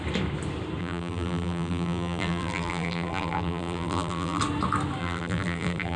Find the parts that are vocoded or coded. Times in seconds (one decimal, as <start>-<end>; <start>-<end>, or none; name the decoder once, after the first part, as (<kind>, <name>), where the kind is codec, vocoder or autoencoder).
0.8-4.4 (vocoder, BigVGAN v2); 5.0-6.0